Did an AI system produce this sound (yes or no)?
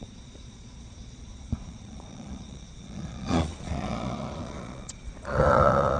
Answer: yes